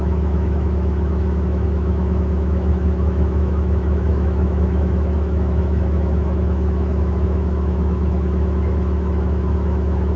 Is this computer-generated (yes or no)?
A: yes